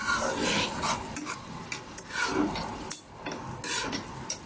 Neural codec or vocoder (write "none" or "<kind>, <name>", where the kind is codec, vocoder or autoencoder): none